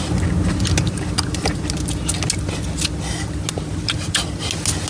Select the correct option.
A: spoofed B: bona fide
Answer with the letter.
B